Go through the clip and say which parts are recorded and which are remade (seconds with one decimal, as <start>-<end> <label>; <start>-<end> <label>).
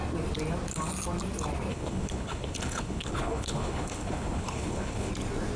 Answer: 0.0-1.7 recorded; 1.7-5.1 remade; 5.1-5.6 recorded